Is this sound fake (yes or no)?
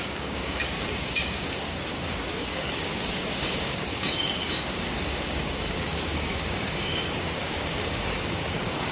yes